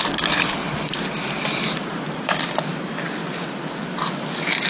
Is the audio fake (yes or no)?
no